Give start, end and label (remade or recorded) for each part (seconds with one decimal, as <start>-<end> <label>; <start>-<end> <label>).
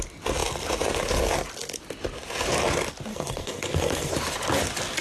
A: 0.0-3.1 recorded; 3.1-4.1 remade; 4.1-5.0 recorded